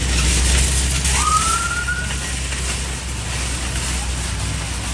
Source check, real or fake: real